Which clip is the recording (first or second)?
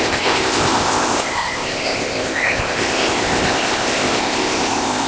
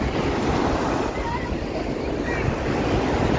second